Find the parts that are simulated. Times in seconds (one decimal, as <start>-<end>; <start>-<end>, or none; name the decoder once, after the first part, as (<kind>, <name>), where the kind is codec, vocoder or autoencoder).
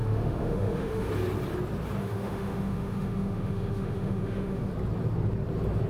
0.0-1.1 (autoencoder, DAC-VAE); 2.0-4.7